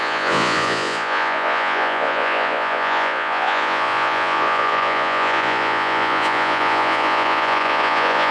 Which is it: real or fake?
fake